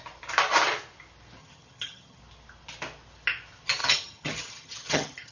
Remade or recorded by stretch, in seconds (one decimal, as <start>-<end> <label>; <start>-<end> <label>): 0.0-1.4 recorded; 1.4-2.2 remade; 2.2-3.8 recorded; 3.8-5.3 remade